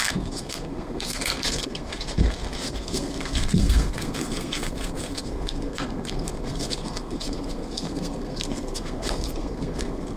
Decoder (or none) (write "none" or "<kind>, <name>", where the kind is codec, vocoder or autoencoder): codec, SNAC